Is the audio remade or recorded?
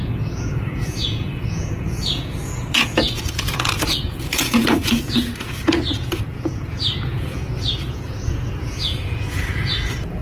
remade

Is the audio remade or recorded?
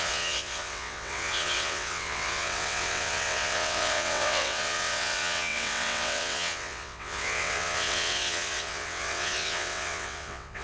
remade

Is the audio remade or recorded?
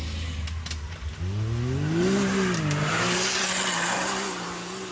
recorded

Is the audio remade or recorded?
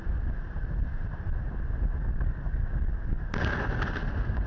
recorded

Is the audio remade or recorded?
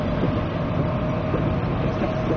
recorded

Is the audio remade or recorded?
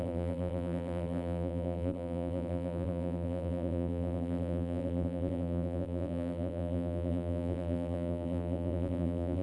remade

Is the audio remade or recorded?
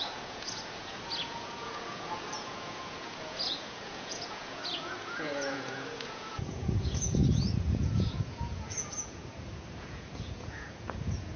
remade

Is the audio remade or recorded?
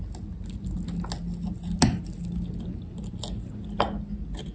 recorded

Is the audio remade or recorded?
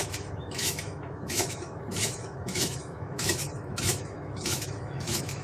remade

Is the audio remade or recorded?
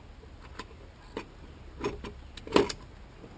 recorded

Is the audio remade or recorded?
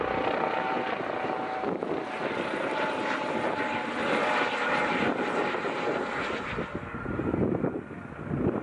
recorded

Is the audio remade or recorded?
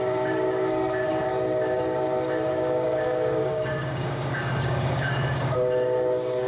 remade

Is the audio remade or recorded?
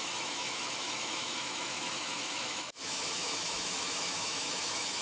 remade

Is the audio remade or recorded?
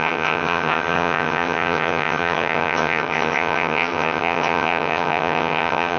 remade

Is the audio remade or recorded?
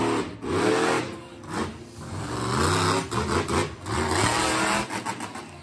recorded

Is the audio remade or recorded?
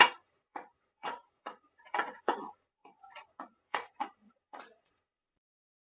remade